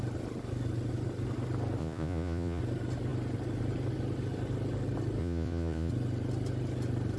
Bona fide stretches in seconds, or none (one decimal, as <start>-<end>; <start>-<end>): 0.0-1.8; 2.6-5.2; 5.9-7.2